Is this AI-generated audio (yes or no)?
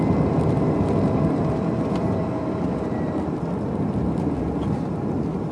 no